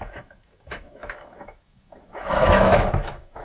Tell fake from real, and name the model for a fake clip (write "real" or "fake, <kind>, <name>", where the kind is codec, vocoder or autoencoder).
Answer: fake, autoencoder, DAC-VAE